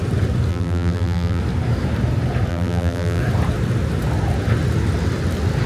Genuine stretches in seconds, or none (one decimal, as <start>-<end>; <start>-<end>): 0.0-0.5; 1.4-2.5; 3.2-5.7